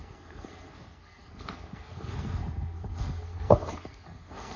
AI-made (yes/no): yes